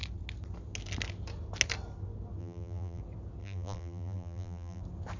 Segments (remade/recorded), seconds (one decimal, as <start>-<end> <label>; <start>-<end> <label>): 0.0-2.4 recorded; 2.4-3.0 remade; 3.0-3.4 recorded; 3.4-4.8 remade; 4.8-5.2 recorded